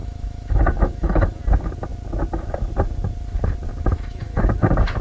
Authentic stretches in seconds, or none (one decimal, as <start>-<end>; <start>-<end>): 1.4-3.9; 4.4-5.0